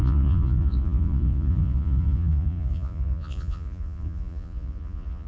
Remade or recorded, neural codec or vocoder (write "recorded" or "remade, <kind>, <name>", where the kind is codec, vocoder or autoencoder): remade, vocoder, Vocos